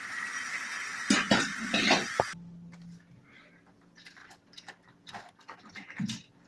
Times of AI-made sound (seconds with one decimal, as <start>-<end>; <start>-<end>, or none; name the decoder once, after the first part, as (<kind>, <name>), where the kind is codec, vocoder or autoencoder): none